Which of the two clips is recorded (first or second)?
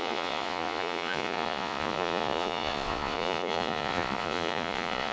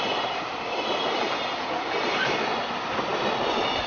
second